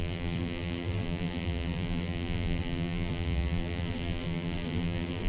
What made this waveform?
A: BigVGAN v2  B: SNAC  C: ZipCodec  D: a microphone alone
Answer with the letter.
A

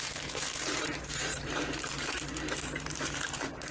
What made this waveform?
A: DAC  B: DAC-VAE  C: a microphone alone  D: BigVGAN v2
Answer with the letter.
D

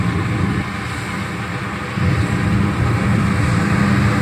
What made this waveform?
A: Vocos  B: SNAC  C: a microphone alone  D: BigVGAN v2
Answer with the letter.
D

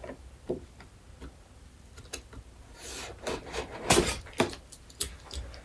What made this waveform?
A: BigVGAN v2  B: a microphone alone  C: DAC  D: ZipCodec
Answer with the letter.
B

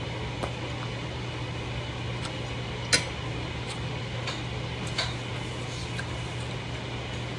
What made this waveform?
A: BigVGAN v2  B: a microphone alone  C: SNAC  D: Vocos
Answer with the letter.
B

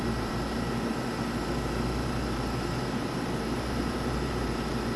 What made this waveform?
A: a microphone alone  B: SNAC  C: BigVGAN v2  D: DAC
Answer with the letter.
C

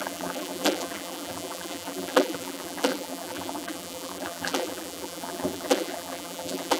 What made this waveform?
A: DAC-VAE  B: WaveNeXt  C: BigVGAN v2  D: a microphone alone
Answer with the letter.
C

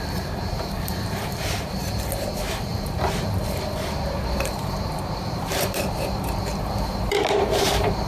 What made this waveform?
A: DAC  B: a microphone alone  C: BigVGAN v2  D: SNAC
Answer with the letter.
C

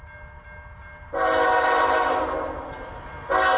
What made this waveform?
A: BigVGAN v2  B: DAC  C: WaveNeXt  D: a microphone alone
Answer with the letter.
D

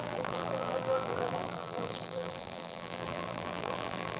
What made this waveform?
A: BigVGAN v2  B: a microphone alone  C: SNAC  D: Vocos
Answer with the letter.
A